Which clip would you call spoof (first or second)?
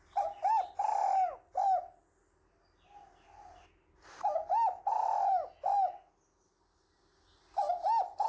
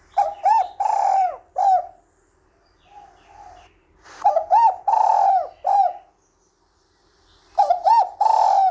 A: second